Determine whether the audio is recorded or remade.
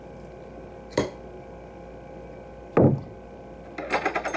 recorded